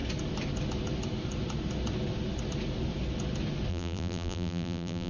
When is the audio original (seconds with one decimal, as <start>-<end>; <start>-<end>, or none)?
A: 0.0-3.7